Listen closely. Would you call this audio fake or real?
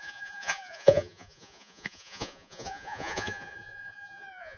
fake